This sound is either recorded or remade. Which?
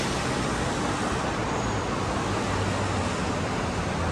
recorded